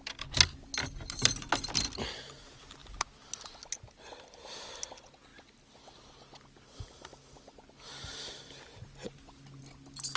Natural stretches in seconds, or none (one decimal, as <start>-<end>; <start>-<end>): 0.0-10.2